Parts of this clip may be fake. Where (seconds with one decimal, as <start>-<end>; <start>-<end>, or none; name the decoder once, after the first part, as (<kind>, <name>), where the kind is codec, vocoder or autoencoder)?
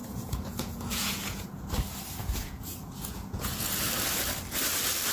0.0-1.7 (vocoder, Vocos); 2.2-3.8